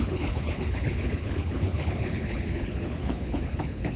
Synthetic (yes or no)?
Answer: yes